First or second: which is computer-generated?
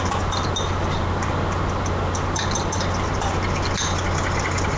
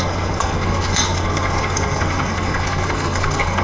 second